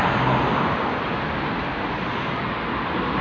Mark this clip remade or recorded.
recorded